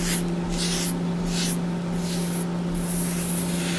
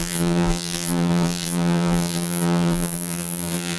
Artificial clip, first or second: second